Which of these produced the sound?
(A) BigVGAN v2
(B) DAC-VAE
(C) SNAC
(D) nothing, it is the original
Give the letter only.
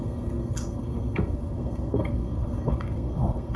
C